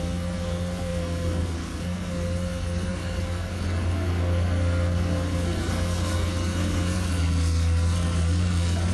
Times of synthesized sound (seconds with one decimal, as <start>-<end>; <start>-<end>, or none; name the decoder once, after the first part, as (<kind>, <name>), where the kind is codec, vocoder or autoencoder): 0.0-8.9 (codec, SNAC)